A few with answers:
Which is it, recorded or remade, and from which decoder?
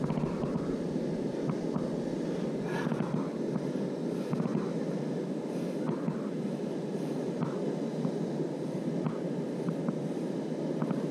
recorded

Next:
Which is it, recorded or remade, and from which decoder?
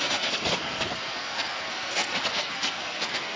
remade, codec, SNAC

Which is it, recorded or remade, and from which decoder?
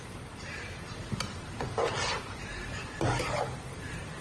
remade, vocoder, BigVGAN v2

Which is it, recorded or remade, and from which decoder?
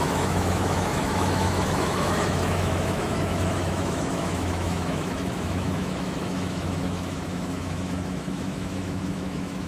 remade, autoencoder, DAC-VAE